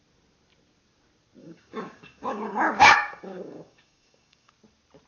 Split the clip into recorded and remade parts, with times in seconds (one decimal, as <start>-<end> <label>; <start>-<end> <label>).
0.0-1.4 recorded; 1.4-4.5 remade; 4.5-5.1 recorded